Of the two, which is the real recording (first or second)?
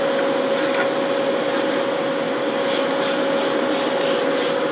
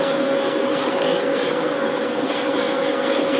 first